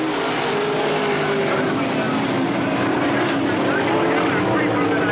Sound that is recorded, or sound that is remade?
recorded